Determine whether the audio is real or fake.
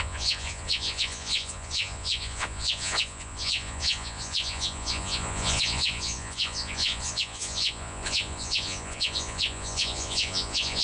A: fake